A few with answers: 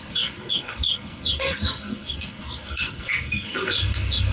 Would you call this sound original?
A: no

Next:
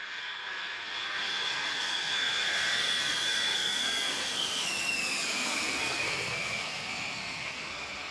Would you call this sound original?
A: no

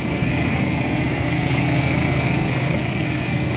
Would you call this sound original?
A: no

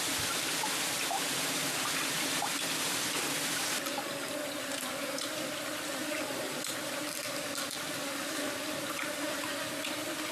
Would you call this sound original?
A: yes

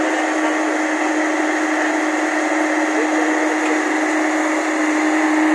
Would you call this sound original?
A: yes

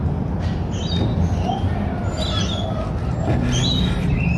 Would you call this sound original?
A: yes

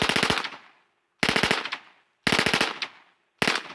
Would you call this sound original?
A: yes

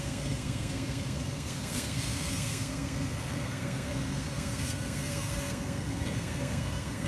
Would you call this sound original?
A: no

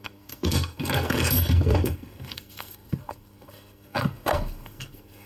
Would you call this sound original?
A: no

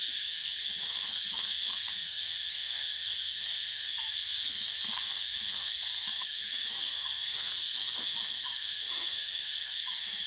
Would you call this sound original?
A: no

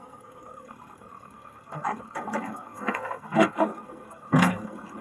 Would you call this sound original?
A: no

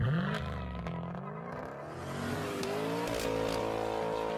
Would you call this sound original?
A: yes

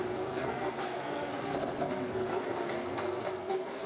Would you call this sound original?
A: no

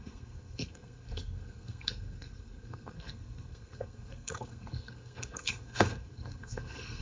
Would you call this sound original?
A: no